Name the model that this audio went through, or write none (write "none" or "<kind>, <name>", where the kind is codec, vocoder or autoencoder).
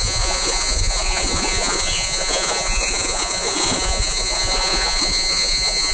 vocoder, Vocos